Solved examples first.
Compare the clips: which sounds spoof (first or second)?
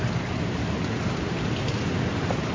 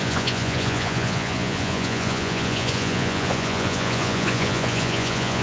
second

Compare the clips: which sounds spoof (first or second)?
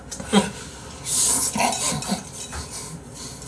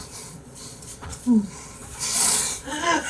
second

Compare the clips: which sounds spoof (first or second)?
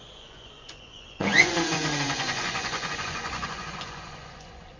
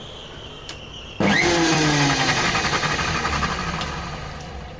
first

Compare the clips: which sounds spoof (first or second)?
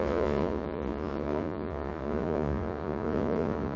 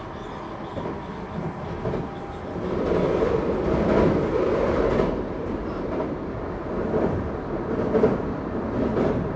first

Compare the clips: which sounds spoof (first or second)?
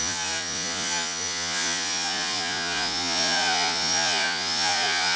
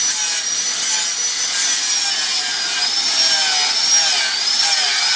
first